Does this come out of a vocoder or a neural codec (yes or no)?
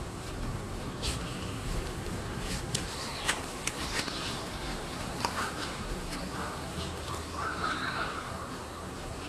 yes